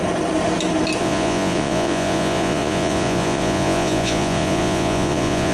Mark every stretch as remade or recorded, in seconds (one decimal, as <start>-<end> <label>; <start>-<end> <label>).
0.0-1.0 recorded; 1.0-5.5 remade